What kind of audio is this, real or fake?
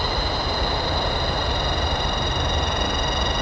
real